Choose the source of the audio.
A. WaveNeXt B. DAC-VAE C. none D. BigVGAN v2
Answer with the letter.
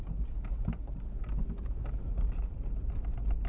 C